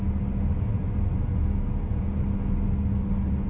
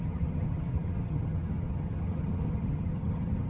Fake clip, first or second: second